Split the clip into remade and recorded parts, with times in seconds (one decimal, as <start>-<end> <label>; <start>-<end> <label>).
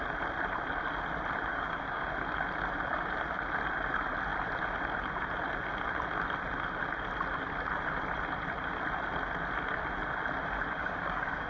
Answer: 0.0-1.5 recorded; 1.5-2.1 remade; 2.1-10.8 recorded; 10.8-11.5 remade